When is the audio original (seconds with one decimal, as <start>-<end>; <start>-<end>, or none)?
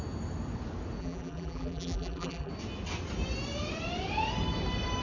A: 0.0-1.0; 2.5-5.0